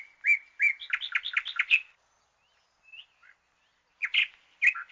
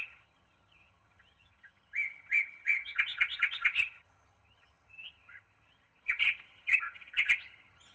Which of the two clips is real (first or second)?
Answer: first